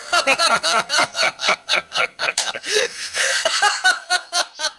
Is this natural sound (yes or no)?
no